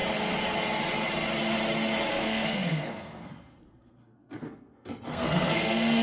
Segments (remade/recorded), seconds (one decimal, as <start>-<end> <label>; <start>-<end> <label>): 0.0-2.1 recorded; 2.1-6.0 remade